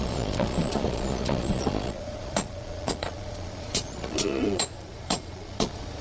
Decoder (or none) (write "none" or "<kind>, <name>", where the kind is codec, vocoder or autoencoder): vocoder, Vocos